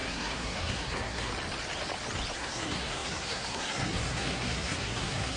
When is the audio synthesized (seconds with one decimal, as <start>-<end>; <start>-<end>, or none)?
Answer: 0.0-1.3; 2.3-5.4